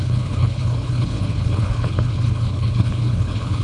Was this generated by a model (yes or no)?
yes